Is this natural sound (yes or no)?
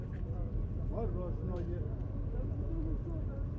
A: yes